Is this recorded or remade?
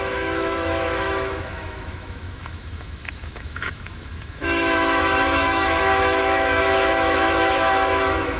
remade